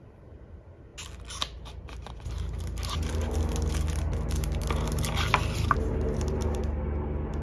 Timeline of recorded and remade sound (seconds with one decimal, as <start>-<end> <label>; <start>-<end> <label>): 0.0-7.4 recorded